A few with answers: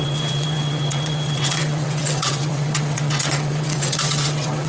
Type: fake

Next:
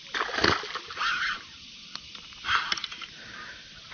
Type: real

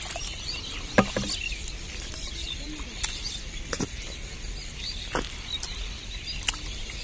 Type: real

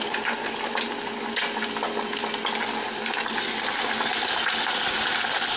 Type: real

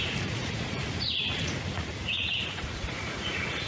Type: fake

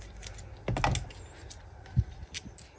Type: real